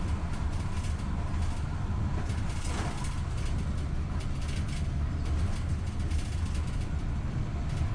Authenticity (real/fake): real